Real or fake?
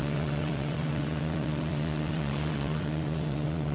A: fake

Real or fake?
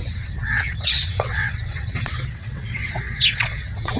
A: fake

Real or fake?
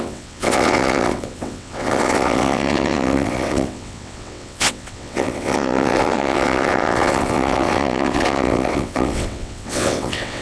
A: fake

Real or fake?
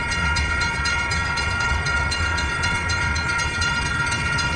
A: fake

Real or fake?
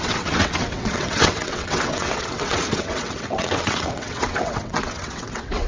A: fake